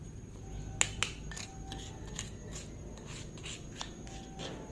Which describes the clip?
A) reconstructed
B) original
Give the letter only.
B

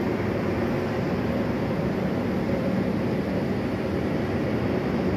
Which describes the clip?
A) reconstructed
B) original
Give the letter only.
B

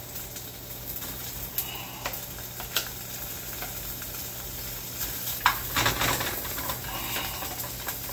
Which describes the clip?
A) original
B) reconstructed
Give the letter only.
A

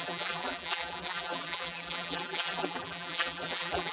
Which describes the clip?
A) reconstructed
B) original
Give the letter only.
A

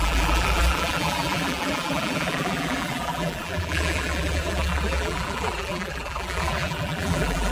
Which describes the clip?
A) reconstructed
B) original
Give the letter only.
A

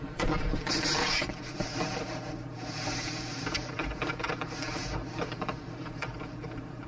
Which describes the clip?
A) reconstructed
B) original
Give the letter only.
A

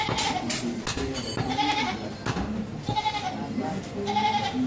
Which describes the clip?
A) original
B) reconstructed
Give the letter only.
A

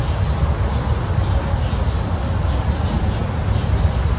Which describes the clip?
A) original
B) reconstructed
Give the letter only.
A